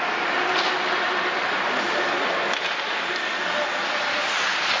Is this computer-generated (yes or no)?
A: no